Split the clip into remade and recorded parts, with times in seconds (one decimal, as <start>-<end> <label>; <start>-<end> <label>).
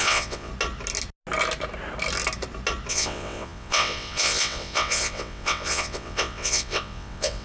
0.0-0.5 remade; 0.5-2.9 recorded; 2.9-7.4 remade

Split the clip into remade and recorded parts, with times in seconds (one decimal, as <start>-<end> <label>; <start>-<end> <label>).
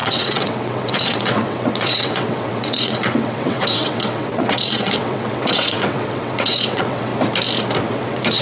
0.0-7.1 remade; 7.1-7.9 recorded; 7.9-8.4 remade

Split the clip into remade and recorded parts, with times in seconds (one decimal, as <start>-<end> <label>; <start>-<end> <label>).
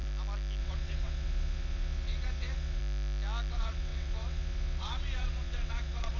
0.0-0.6 recorded; 0.6-2.8 remade; 2.8-3.5 recorded; 3.5-6.2 remade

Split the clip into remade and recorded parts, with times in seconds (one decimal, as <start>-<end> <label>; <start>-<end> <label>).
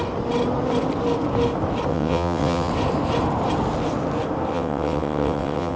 0.0-1.9 recorded; 1.9-2.7 remade; 2.7-4.5 recorded; 4.5-5.8 remade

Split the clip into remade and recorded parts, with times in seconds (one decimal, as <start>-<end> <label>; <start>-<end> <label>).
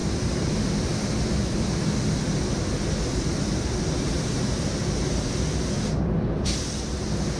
0.0-7.4 recorded